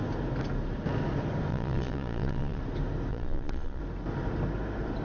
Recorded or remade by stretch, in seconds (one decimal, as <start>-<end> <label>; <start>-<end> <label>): 0.0-1.5 recorded; 1.5-2.6 remade; 2.6-3.1 recorded; 3.1-3.8 remade; 3.8-5.0 recorded